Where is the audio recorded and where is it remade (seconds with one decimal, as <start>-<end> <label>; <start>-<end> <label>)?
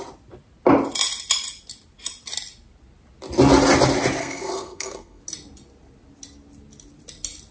0.0-4.2 recorded; 4.2-5.2 remade; 5.2-7.5 recorded